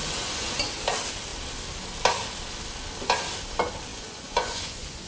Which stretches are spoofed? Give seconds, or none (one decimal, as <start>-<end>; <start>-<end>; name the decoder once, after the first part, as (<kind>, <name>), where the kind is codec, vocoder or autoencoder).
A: 0.0-0.6 (vocoder, Vocos); 3.9-5.1